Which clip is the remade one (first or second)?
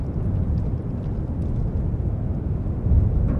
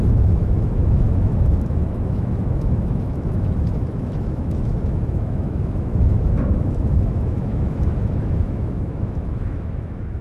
second